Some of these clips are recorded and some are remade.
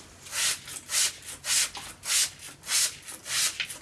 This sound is recorded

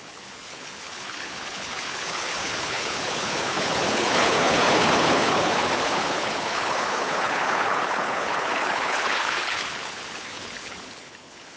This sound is remade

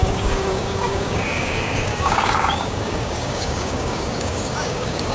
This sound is remade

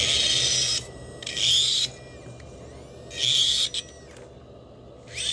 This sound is recorded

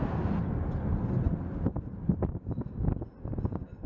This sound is recorded